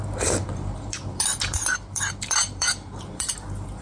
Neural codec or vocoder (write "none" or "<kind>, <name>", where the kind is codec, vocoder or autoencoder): vocoder, BigVGAN v2